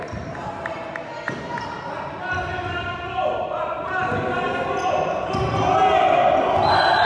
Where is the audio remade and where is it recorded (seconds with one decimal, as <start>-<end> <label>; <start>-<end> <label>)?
0.0-7.0 recorded